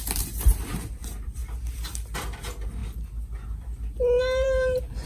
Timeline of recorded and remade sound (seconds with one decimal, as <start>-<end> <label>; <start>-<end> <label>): 0.0-1.4 remade; 1.4-2.1 recorded; 2.1-2.8 remade; 2.8-4.2 recorded; 4.2-5.1 remade